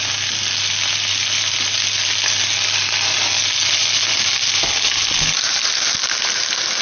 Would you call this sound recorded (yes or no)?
yes